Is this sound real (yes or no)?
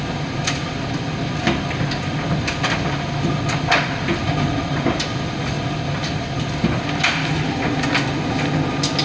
yes